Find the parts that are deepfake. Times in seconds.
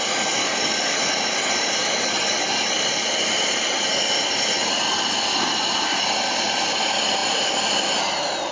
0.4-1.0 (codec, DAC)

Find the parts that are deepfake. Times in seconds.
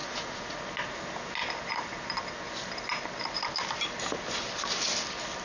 0.0-0.6 (vocoder, Vocos)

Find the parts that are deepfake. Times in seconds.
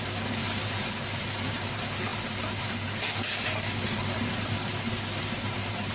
none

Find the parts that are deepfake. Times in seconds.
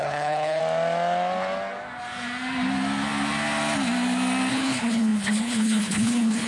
0.0-0.6 (codec, HILCodec); 4.5-6.5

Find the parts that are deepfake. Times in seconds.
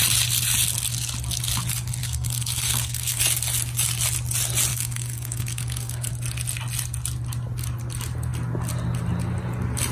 2.0-3.2 (codec, SNAC); 4.7-6.1